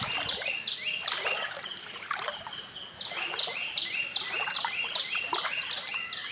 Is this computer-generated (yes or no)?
no